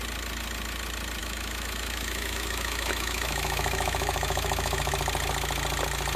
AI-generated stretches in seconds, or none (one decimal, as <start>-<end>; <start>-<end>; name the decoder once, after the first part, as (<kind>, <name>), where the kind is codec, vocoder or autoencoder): 1.2-4.9 (autoencoder, DAC-VAE)